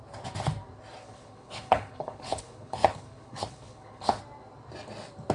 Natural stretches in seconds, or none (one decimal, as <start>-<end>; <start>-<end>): 0.0-1.0; 4.2-5.3